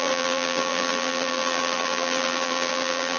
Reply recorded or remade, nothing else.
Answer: remade